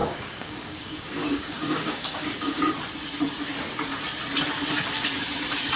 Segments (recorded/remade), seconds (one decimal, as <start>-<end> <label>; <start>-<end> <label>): 0.0-2.6 remade; 2.6-5.8 recorded